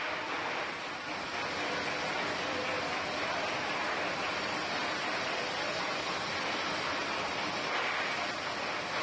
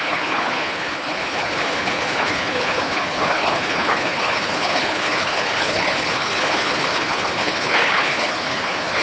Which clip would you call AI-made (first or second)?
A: second